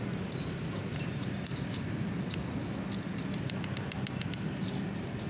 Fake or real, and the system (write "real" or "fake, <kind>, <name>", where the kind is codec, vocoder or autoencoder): real